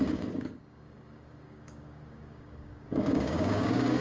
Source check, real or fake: fake